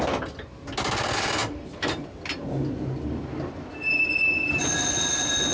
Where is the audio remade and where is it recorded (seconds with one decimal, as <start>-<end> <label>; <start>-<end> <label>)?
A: 0.0-5.5 recorded